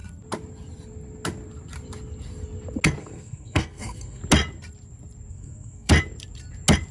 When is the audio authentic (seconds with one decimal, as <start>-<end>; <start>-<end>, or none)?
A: 0.0-3.0; 4.2-5.3; 5.9-6.9